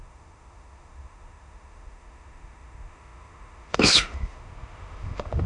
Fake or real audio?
fake